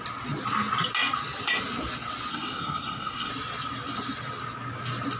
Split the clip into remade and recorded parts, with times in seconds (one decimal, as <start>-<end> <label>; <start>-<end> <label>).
0.0-2.3 recorded; 2.3-3.3 remade; 3.3-5.2 recorded